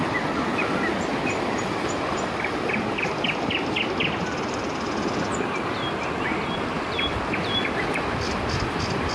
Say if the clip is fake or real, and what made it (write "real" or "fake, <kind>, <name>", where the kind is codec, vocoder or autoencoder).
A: real